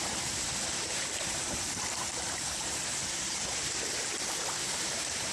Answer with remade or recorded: remade